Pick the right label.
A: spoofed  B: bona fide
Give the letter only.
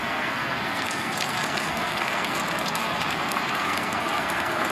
A